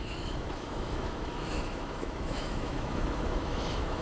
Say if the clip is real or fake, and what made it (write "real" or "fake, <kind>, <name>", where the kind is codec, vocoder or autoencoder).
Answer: fake, autoencoder, DAC-VAE